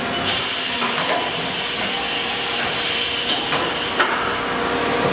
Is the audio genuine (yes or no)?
yes